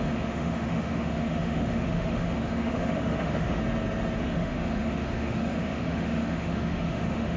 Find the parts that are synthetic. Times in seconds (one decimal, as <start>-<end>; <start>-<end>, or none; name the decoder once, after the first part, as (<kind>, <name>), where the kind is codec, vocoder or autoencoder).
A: 0.0-3.6 (autoencoder, DAC-VAE); 4.2-7.4